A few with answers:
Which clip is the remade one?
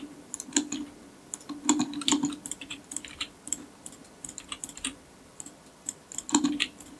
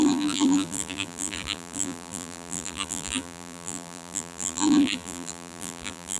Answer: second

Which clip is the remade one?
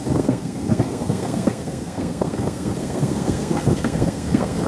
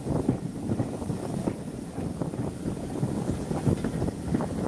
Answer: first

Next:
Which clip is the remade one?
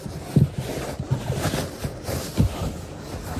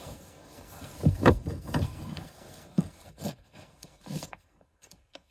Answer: second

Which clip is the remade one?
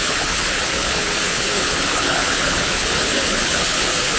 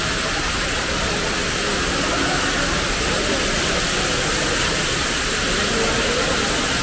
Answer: first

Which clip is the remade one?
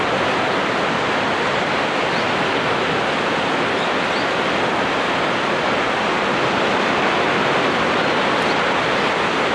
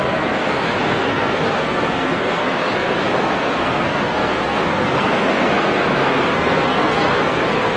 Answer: second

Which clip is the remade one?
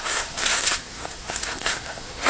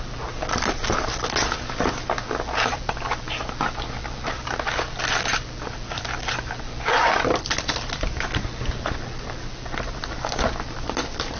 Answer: first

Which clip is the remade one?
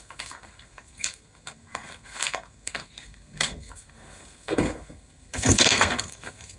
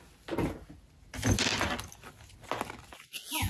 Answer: first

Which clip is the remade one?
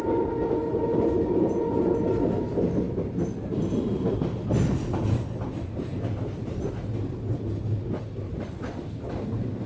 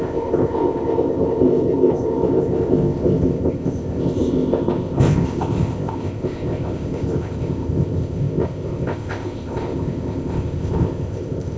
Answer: second